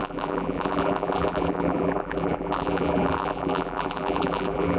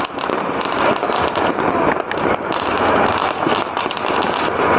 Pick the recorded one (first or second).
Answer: second